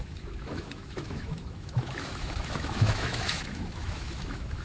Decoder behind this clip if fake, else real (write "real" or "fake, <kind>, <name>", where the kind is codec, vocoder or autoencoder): fake, autoencoder, DAC-VAE